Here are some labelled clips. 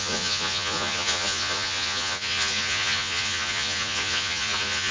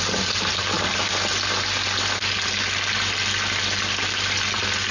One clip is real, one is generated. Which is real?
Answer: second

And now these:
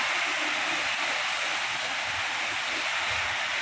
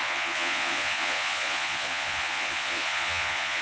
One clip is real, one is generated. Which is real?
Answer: first